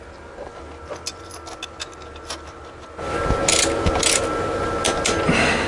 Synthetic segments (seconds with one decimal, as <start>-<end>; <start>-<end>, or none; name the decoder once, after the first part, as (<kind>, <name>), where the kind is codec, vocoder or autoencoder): none